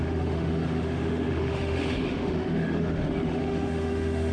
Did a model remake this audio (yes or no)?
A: yes